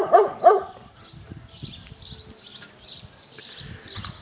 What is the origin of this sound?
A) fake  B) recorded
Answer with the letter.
B